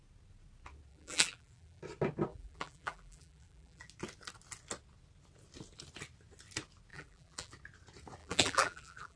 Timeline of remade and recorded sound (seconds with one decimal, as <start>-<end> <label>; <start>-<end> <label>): 0.0-0.9 recorded; 0.9-1.8 remade; 1.8-2.3 recorded; 2.3-3.9 remade; 3.9-6.9 recorded; 6.9-7.5 remade; 7.5-8.2 recorded; 8.2-9.2 remade